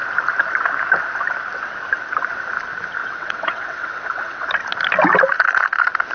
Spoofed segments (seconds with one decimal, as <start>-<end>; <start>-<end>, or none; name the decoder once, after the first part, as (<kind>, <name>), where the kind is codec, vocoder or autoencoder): 3.0-4.5 (vocoder, WaveNeXt)